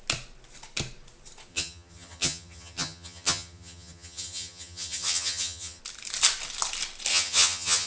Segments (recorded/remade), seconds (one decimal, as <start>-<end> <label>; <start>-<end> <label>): 0.0-1.5 recorded; 1.5-5.8 remade; 5.8-7.1 recorded; 7.1-7.9 remade